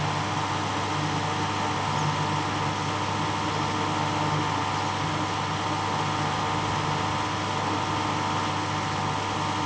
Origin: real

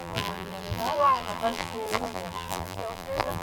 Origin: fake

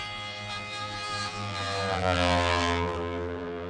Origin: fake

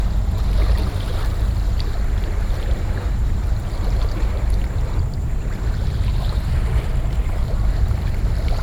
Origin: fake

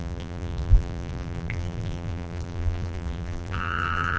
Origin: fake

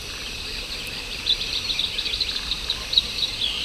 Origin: fake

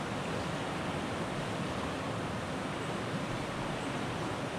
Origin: real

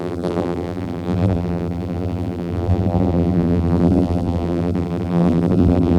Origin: fake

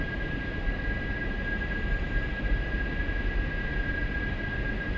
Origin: fake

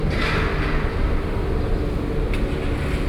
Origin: real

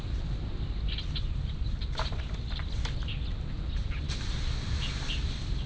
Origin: fake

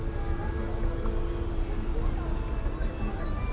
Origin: real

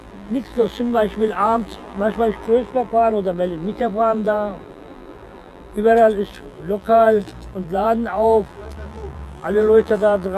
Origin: fake